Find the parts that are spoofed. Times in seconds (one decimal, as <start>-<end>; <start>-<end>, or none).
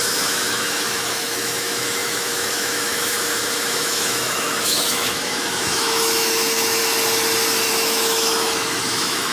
0.0-6.8; 7.7-9.3